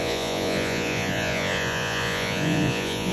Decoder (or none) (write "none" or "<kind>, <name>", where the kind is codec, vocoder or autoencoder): vocoder, Vocos